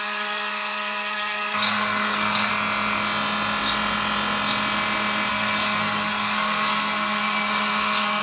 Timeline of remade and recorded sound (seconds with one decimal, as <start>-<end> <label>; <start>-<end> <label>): 0.0-2.5 remade; 2.5-5.3 recorded; 5.3-8.2 remade